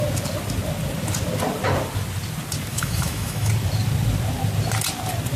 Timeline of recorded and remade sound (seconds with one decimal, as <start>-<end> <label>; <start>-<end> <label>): 0.0-2.7 recorded; 2.7-3.5 remade; 3.5-5.4 recorded

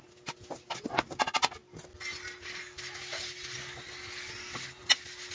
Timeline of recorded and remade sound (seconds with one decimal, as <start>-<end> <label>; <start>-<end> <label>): 0.0-5.3 recorded

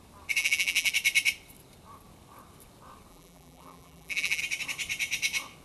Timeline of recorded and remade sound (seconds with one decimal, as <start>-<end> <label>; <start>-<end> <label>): 0.0-0.4 recorded; 0.4-0.9 remade; 0.9-3.1 recorded; 3.1-4.4 remade; 4.4-5.6 recorded

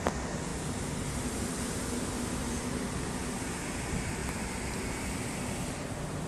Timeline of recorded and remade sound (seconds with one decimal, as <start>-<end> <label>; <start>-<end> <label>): 0.0-6.3 recorded